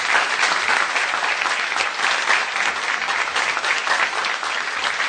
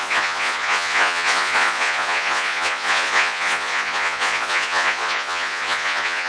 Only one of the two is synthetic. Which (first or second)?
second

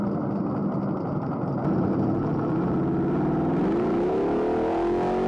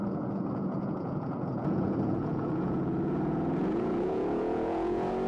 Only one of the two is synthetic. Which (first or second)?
second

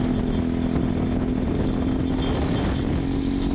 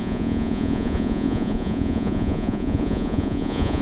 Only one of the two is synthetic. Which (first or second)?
second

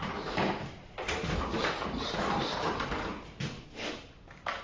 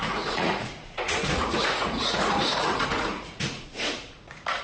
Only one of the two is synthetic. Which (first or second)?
second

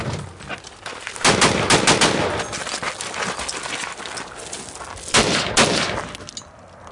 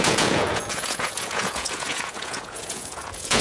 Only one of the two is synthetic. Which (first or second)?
second